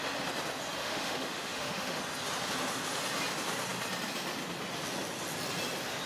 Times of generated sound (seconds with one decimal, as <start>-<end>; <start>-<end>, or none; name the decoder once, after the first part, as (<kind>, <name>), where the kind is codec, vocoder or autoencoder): 0.8-2.0 (autoencoder, DAC-VAE)